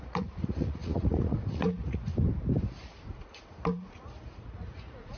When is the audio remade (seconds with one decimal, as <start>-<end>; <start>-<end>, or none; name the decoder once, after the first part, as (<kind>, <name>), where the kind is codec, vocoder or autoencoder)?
0.0-2.1 (vocoder, Vocos); 3.1-5.2